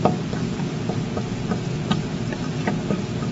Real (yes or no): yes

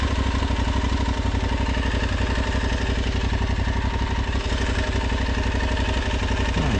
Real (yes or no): yes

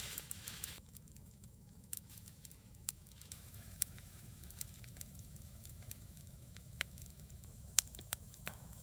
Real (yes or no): no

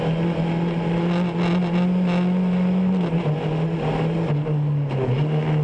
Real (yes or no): yes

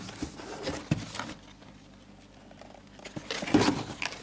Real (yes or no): yes